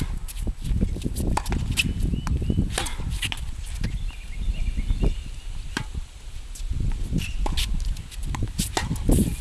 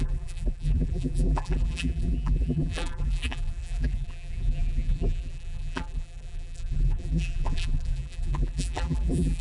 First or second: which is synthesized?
second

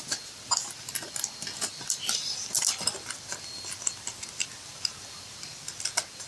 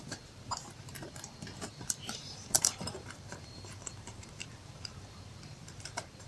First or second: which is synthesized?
second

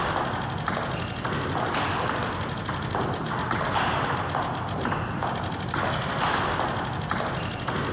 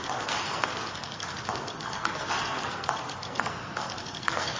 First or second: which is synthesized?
second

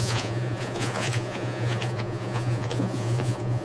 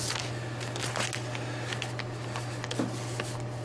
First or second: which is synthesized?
first